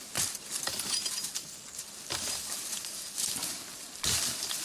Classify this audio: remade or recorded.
recorded